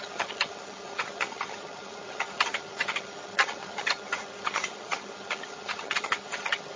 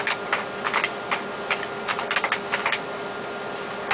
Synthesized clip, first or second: first